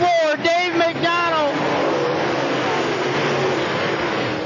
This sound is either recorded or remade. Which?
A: recorded